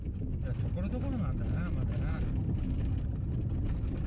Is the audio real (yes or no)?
yes